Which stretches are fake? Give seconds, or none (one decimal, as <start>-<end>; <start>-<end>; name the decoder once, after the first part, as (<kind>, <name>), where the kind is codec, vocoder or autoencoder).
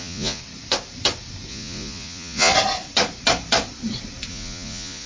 0.0-0.4 (vocoder, Vocos); 1.5-2.5; 4.3-5.1